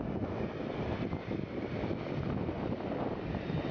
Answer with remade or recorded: recorded